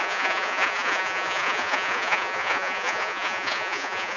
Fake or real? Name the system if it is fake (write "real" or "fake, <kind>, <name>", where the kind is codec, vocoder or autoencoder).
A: fake, vocoder, Vocos